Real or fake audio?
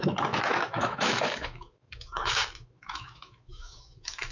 fake